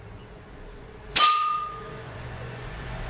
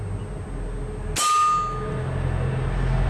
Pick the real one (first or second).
second